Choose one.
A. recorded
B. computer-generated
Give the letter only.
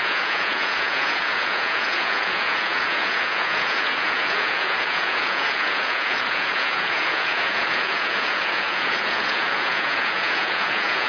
B